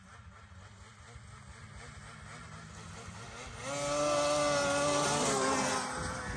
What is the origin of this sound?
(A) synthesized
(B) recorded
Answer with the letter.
B